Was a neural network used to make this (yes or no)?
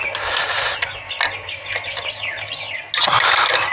no